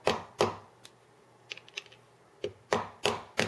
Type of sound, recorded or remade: recorded